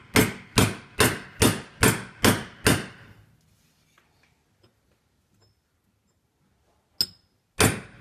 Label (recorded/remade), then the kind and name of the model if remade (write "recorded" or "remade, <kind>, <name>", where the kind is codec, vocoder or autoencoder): recorded